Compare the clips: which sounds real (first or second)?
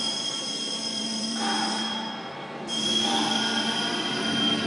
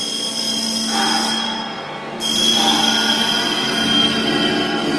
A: second